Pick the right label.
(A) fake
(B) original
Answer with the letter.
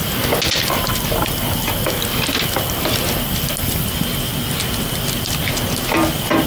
B